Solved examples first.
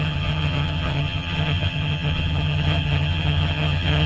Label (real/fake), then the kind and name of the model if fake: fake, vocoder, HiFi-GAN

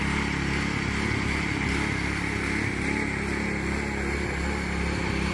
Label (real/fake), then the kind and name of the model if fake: real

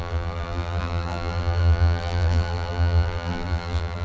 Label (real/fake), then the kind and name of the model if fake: fake, vocoder, BigVGAN v2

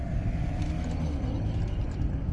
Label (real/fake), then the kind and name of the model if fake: real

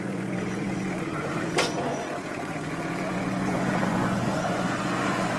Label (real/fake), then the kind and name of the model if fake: fake, vocoder, Vocos